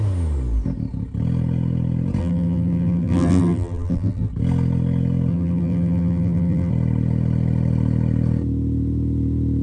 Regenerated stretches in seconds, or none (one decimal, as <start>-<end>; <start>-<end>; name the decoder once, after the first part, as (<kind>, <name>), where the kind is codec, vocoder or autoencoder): 2.2-4.3 (vocoder, BigVGAN v2); 5.3-6.7